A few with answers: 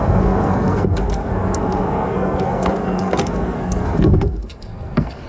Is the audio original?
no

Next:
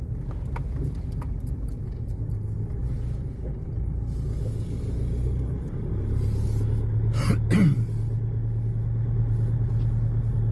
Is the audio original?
yes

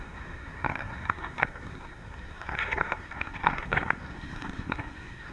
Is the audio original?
no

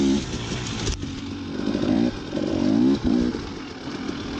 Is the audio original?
yes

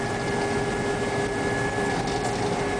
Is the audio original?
yes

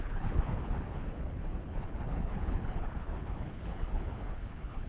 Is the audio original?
no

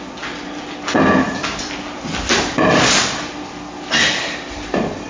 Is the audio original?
yes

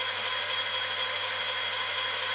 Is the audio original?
yes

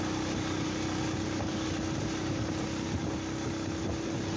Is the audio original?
yes